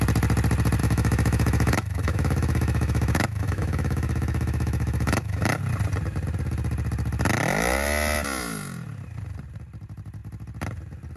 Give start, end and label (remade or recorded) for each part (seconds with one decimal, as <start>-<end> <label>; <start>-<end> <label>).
0.0-0.8 recorded; 0.8-5.6 remade; 5.6-11.2 recorded